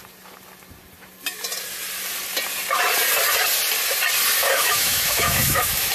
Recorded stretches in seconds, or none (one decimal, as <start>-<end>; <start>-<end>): 0.0-4.4